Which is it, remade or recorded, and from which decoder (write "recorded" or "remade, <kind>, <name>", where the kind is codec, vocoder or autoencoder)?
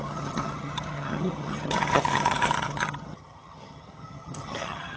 remade, vocoder, HiFi-GAN